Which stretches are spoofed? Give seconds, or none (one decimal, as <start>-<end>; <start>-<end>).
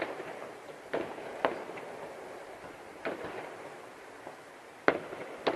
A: 0.0-2.4; 2.9-3.9